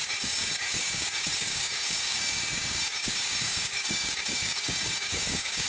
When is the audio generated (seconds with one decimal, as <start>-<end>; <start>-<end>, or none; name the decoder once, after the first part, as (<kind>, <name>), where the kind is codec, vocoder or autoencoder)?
0.0-5.7 (codec, DAC)